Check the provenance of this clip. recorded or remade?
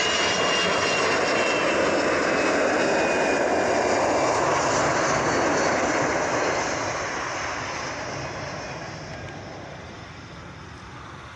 recorded